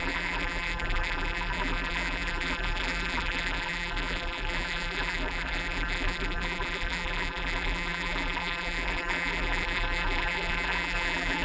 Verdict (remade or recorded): remade